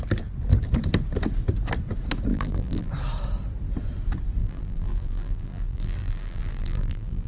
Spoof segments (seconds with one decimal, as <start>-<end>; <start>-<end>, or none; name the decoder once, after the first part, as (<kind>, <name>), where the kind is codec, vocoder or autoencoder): 2.3-2.9 (vocoder, BigVGAN v2); 4.4-7.3